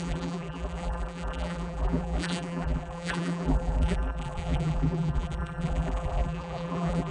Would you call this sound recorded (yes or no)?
no